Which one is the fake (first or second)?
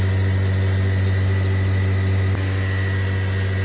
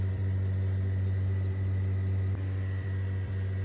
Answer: second